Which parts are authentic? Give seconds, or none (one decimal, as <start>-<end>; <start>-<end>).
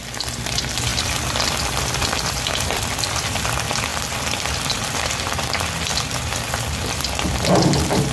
0.0-0.9; 3.5-3.9; 7.0-8.1